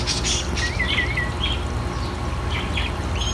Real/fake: real